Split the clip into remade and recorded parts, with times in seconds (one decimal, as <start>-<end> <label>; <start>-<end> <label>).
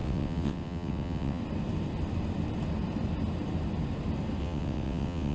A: 0.0-1.4 remade; 1.4-4.4 recorded; 4.4-5.3 remade